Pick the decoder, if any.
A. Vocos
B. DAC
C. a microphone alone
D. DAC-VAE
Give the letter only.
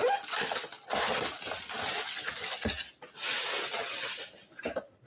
C